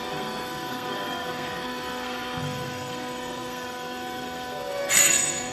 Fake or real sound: fake